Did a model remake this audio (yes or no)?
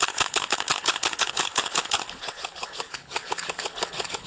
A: yes